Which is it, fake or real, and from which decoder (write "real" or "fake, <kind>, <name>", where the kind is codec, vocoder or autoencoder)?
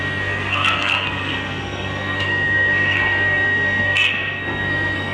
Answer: fake, codec, SNAC